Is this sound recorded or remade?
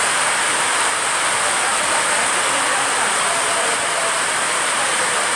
recorded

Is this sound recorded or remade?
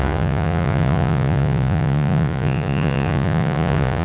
remade